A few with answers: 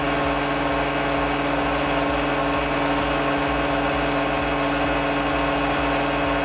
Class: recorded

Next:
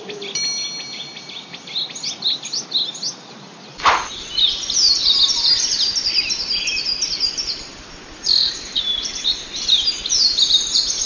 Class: recorded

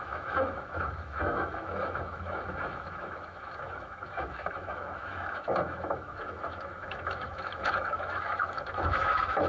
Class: remade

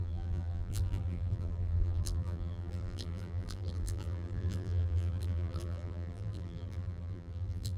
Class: remade